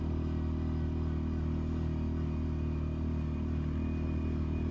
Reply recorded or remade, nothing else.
recorded